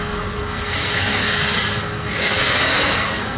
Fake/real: fake